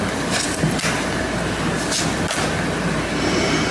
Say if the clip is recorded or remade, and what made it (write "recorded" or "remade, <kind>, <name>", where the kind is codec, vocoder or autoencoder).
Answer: recorded